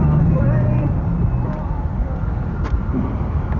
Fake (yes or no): yes